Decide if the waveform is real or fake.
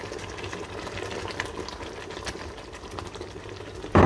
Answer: real